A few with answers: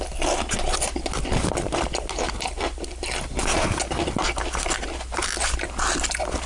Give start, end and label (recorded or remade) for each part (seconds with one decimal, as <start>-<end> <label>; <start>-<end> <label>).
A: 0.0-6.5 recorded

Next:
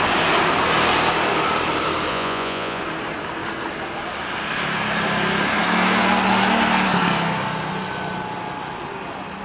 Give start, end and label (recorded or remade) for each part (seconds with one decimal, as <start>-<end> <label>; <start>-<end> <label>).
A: 0.0-2.1 recorded; 2.1-2.8 remade; 2.8-9.4 recorded

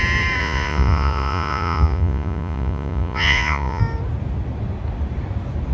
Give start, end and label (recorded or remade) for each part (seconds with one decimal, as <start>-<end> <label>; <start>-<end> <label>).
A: 0.0-0.4 recorded; 0.4-3.8 remade; 3.8-5.7 recorded